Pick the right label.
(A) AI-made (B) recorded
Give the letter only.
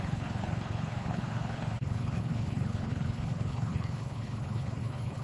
A